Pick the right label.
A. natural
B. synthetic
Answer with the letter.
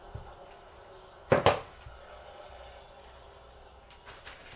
A